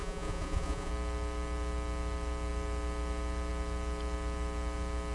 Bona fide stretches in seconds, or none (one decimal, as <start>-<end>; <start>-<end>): 0.9-5.1